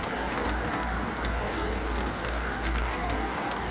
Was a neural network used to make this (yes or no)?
yes